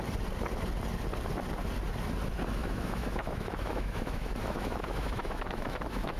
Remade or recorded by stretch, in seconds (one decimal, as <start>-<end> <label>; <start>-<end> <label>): 0.0-2.6 recorded; 2.6-6.2 remade